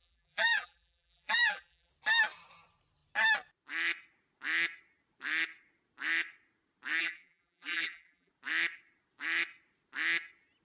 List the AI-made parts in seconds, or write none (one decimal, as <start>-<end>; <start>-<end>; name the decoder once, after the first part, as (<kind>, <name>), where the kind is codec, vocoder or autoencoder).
0.0-1.9 (vocoder, BigVGAN v2); 7.0-8.3

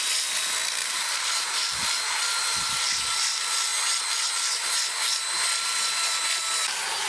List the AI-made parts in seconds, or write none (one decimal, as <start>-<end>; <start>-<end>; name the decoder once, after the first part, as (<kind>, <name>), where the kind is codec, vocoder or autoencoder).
0.8-1.8 (vocoder, BigVGAN v2)

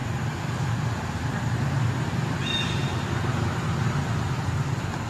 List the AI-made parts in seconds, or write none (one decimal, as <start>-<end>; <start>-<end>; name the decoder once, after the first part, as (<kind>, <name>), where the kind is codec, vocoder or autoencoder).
0.0-3.1 (vocoder, BigVGAN v2); 4.4-5.1

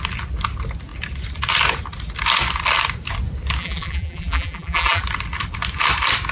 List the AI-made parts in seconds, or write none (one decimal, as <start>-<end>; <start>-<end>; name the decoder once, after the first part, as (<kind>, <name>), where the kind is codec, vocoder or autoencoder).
3.6-5.0 (vocoder, BigVGAN v2)

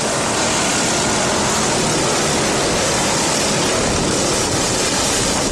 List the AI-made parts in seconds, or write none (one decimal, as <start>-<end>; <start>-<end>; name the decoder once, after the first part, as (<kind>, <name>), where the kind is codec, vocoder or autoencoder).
4.4-5.5 (vocoder, BigVGAN v2)